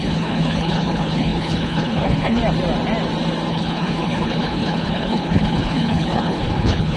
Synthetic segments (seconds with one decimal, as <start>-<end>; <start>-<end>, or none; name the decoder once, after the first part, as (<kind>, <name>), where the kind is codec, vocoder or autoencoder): 0.0-2.4 (codec, HILCodec); 3.5-7.0